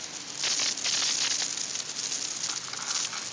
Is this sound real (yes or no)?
yes